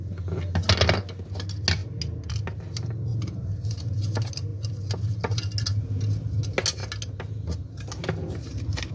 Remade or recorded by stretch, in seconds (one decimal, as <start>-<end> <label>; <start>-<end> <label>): 0.0-3.1 recorded; 3.1-4.0 remade; 4.0-8.9 recorded